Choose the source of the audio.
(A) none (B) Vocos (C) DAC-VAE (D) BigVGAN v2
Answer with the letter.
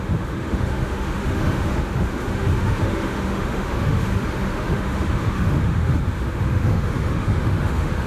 C